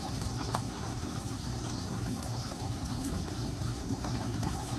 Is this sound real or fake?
fake